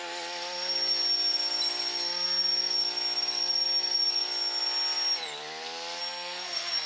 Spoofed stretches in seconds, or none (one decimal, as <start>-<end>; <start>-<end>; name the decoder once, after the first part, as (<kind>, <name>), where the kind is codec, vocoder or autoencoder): 6.0-6.9 (codec, SNAC)